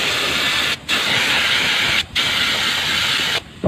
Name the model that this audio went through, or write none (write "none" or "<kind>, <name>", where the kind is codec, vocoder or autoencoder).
none